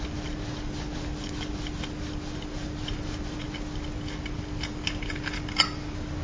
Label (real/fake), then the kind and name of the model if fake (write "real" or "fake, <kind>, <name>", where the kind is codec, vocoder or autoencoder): real